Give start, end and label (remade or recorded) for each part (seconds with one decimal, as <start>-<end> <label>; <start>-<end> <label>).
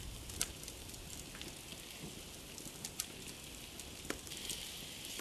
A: 0.0-5.2 recorded